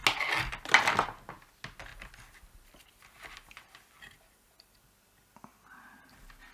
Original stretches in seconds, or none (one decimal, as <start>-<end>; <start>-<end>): 0.0-1.9; 4.8-6.5